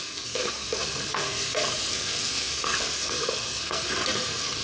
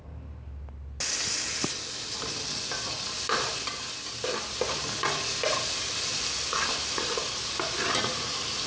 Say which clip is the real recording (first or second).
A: second